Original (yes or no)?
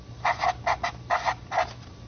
yes